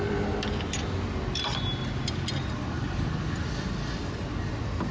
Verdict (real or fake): real